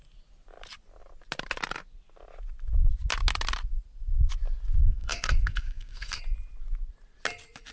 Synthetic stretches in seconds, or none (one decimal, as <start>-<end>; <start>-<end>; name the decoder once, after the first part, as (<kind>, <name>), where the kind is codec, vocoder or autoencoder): 4.8-6.2 (codec, SNAC)